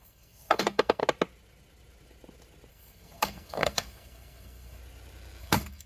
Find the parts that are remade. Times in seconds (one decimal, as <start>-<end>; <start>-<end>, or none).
0.0-1.0; 2.7-4.8; 5.4-5.9